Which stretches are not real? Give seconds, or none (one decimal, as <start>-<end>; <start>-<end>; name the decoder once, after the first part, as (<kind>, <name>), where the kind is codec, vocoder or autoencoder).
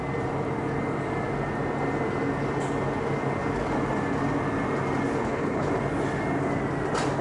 5.2-5.7 (codec, HILCodec)